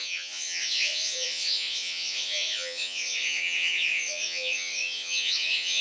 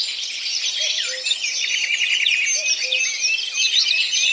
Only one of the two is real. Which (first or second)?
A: second